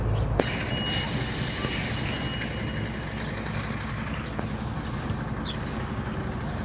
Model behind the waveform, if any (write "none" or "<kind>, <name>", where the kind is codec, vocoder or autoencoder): none